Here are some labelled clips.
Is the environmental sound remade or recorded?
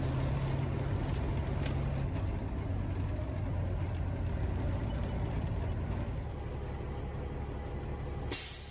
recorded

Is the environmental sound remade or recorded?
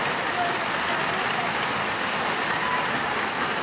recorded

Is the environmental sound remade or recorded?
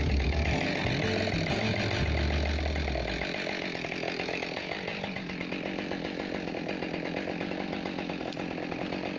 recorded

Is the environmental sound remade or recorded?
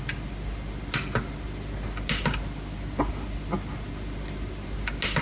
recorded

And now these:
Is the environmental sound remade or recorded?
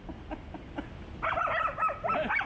recorded